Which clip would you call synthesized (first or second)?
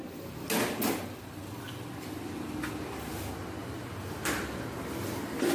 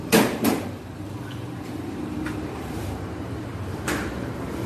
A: second